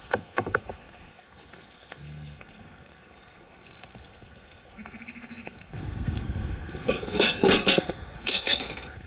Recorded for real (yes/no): no